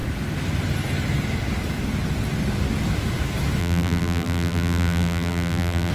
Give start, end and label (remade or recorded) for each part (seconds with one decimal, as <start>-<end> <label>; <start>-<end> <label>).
0.0-3.6 recorded; 3.6-5.9 remade